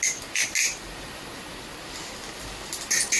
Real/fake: real